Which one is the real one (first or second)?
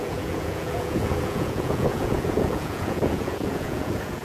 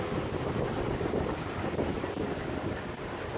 second